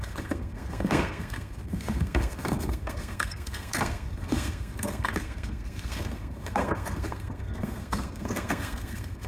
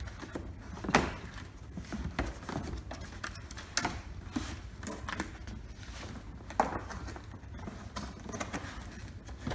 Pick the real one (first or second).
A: second